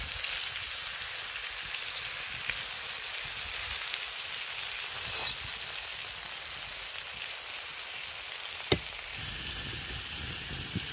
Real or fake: real